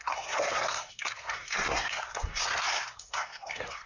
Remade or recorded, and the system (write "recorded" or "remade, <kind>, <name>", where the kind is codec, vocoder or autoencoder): remade, codec, SNAC